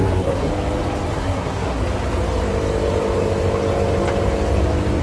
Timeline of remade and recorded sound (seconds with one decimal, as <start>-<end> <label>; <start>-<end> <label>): 0.0-0.5 remade; 0.5-1.1 recorded; 1.1-1.8 remade; 1.8-5.0 recorded